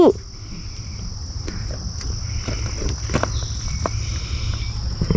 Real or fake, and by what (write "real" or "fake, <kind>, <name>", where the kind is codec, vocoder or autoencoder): real